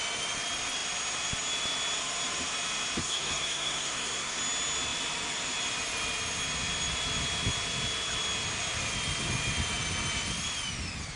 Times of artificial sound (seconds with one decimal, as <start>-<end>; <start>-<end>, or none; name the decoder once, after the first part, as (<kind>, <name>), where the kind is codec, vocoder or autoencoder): 3.0-4.4 (codec, SNAC)